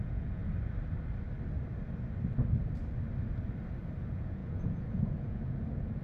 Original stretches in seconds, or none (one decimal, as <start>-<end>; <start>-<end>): 0.4-4.0